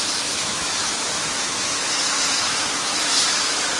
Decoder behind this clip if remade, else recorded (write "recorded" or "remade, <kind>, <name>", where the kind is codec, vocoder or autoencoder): remade, autoencoder, DAC-VAE